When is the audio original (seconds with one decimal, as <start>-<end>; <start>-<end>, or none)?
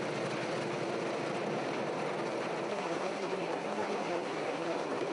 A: 0.0-2.7